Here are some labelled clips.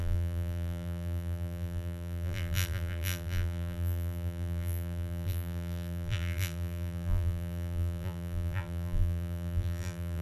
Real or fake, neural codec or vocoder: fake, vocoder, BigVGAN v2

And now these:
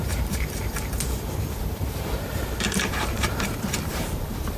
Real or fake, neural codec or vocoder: fake, vocoder, BigVGAN v2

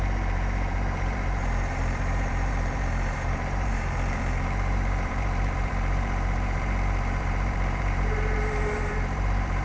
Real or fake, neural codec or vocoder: fake, vocoder, BigVGAN v2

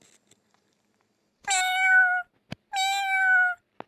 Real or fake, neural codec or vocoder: real